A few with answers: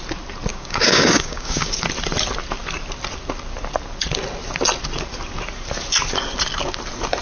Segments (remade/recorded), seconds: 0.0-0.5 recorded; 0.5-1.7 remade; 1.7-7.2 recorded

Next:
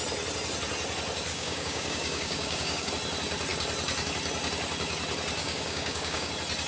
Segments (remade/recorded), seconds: 0.0-1.3 recorded; 1.3-2.9 remade; 2.9-5.4 recorded; 5.4-6.3 remade; 6.3-6.7 recorded

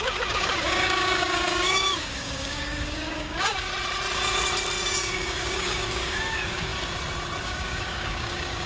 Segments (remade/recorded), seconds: 0.0-3.7 remade; 3.7-4.8 recorded; 4.8-6.7 remade; 6.7-7.4 recorded; 7.4-8.7 remade